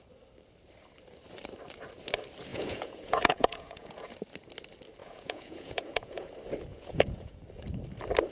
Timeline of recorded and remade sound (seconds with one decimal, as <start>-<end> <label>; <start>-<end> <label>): 0.0-2.5 recorded; 2.5-4.1 remade; 4.1-5.0 recorded; 5.0-6.3 remade; 6.3-6.7 recorded; 6.7-7.4 remade; 7.4-8.3 recorded